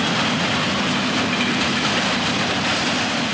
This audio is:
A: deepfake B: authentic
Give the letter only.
B